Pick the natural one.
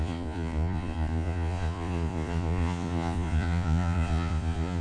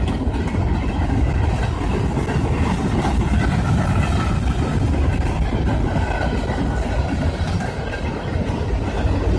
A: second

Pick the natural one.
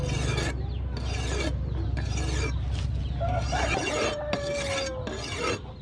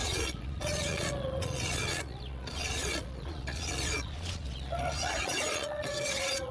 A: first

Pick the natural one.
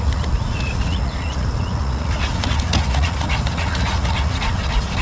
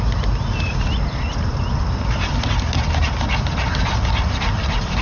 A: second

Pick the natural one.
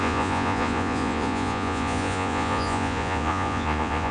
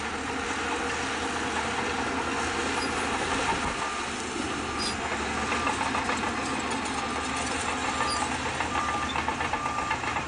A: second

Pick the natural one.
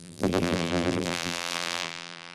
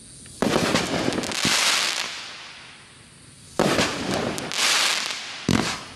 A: second